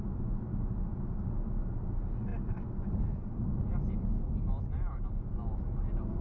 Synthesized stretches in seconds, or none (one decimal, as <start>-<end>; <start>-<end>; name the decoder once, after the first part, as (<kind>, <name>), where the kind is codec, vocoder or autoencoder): 2.3-6.2 (vocoder, BigVGAN v2)